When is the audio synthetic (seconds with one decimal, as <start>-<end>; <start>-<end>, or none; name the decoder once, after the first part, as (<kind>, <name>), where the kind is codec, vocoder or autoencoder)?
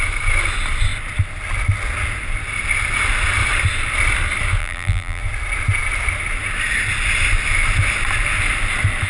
4.6-5.2 (vocoder, BigVGAN v2)